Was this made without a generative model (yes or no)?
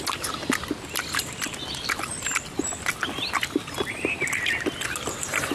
yes